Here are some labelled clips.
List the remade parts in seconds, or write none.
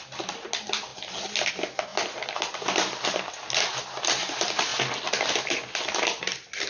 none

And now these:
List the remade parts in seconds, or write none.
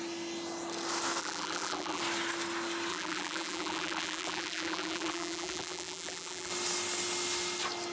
1.2-2.0; 2.9-6.5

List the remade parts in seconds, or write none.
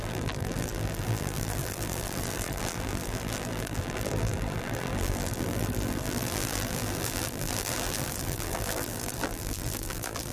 0.0-10.3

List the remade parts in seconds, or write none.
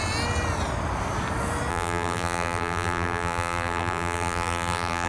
1.7-5.1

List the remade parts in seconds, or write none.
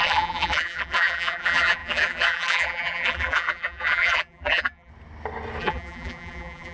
0.0-4.9; 5.6-6.7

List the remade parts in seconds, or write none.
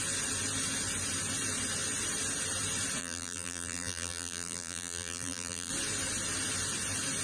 3.0-5.7